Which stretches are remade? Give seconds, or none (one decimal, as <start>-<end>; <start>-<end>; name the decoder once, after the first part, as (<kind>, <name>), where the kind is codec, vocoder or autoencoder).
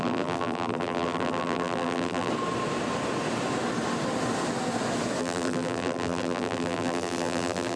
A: 0.0-2.3 (vocoder, BigVGAN v2); 5.2-7.8